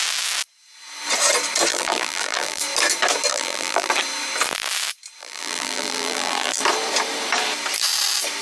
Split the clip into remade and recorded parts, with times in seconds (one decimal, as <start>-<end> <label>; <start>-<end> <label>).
0.0-1.7 recorded; 1.7-2.6 remade; 2.6-3.3 recorded; 3.3-3.9 remade; 3.9-5.2 recorded; 5.2-6.6 remade; 6.6-8.4 recorded